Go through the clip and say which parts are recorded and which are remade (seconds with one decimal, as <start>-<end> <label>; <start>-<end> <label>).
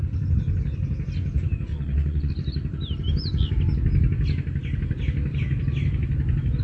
0.0-1.7 recorded; 1.7-2.3 remade; 2.3-6.6 recorded